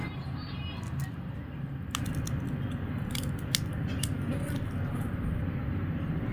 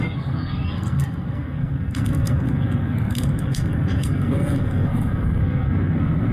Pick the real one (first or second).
first